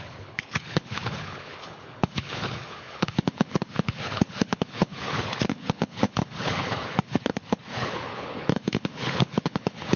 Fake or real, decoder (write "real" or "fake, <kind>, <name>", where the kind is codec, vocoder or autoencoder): fake, codec, HILCodec